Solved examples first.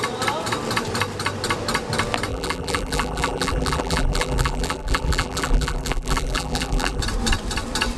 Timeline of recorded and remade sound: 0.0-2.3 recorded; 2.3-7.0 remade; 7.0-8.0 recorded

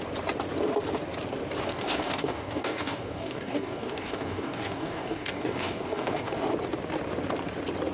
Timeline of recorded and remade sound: 0.0-1.7 recorded; 1.7-6.4 remade; 6.4-7.9 recorded

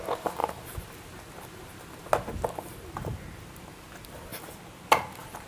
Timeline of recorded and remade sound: 0.0-5.5 recorded

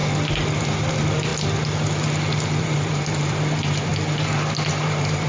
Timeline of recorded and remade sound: 0.0-0.6 recorded; 0.6-1.3 remade; 1.3-2.6 recorded; 2.6-3.9 remade; 3.9-4.7 recorded; 4.7-5.3 remade

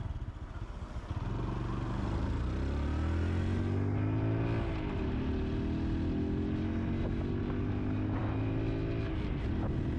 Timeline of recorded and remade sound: 0.0-10.0 recorded